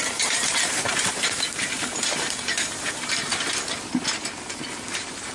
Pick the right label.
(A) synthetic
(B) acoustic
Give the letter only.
A